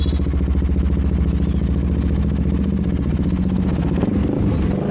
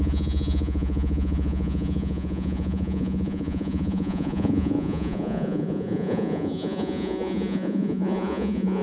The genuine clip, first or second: first